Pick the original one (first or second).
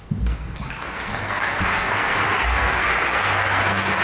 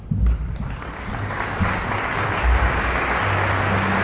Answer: second